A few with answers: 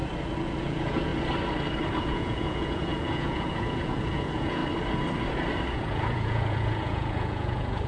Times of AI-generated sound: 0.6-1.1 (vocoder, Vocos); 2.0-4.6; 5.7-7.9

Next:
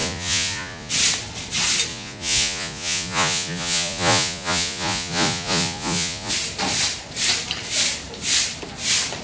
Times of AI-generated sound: 0.0-0.9 (vocoder, Vocos); 1.9-6.3

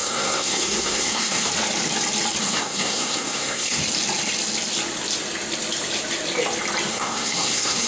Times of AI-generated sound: 0.0-1.5 (codec, SNAC); 2.4-3.8; 6.9-7.9